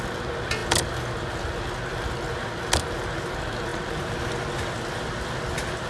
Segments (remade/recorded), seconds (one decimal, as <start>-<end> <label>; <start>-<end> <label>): 0.0-5.9 recorded